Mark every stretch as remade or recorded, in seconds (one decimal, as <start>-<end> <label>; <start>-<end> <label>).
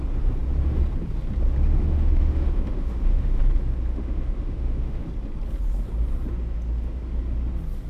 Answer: 0.0-1.7 recorded; 1.7-3.4 remade; 3.4-3.9 recorded; 3.9-5.1 remade; 5.1-7.9 recorded